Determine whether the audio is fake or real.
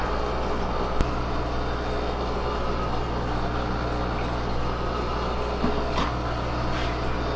real